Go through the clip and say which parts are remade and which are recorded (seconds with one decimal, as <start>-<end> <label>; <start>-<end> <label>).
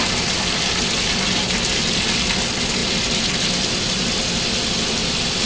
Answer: 0.0-5.5 recorded